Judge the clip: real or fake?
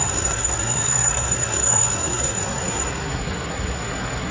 fake